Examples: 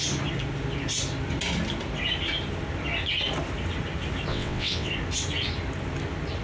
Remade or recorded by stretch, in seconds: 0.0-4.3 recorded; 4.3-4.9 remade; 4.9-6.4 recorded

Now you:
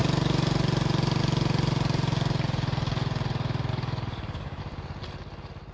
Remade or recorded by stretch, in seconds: 0.0-3.7 recorded; 3.7-4.6 remade; 4.6-5.7 recorded

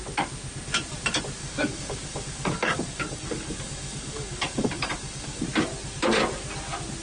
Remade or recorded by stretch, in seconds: 0.0-1.4 recorded; 1.4-5.4 remade; 5.4-7.0 recorded

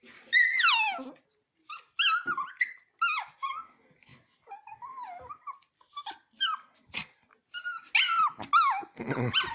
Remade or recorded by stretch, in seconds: 0.0-9.5 recorded

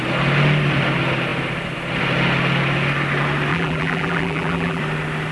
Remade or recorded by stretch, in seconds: 0.0-3.5 recorded; 3.5-4.8 remade; 4.8-5.3 recorded

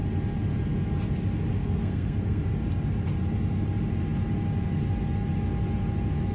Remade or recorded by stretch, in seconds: 0.0-1.5 recorded; 1.5-2.4 remade; 2.4-6.3 recorded

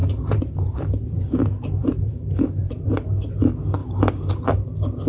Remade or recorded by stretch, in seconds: 0.0-3.1 remade; 3.1-3.8 recorded; 3.8-4.3 remade; 4.3-5.1 recorded